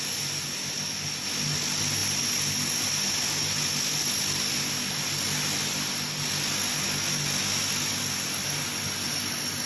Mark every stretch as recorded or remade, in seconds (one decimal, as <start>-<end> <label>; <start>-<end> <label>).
0.0-9.7 recorded